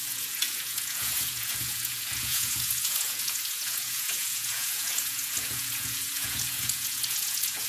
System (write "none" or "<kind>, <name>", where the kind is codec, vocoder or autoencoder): vocoder, Vocos